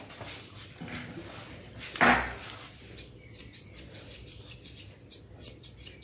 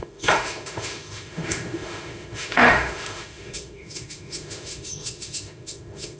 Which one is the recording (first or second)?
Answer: first